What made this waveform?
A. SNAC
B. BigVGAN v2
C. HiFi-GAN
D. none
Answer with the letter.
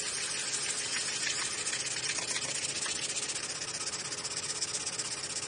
D